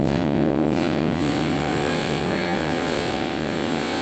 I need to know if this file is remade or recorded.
remade